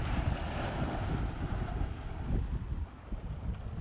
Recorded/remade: recorded